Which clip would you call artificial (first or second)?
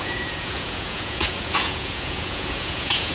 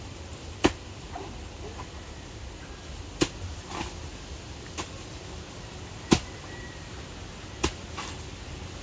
first